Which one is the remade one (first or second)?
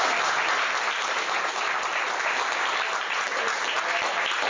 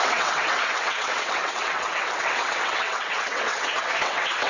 second